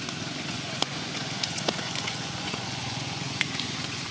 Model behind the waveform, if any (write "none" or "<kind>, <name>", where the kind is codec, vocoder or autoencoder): vocoder, Vocos